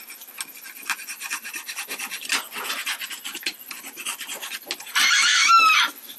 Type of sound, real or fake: real